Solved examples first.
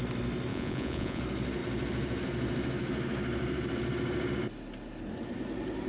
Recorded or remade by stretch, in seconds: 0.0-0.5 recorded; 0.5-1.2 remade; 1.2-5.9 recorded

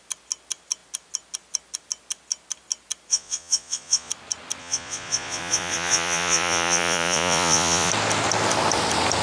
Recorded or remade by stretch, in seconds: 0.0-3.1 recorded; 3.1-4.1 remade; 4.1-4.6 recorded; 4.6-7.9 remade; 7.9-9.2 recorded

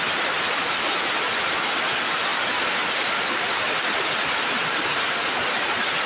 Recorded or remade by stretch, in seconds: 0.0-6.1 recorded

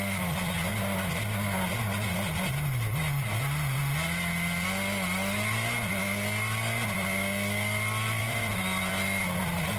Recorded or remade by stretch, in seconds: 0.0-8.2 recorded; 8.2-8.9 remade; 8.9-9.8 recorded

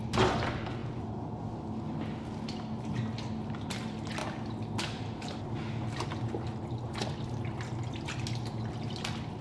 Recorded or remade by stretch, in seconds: 0.0-9.4 recorded

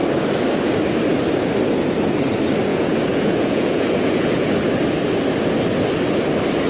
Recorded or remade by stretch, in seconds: 0.0-2.7 recorded; 2.7-4.5 remade; 4.5-6.7 recorded